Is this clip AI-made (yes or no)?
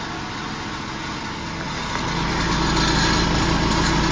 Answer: no